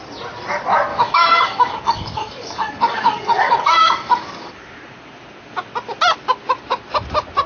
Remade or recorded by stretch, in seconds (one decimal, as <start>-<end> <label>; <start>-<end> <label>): 0.0-0.9 recorded; 0.9-4.5 remade; 4.5-7.5 recorded